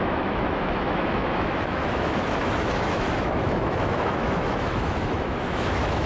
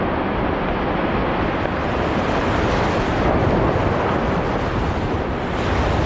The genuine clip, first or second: second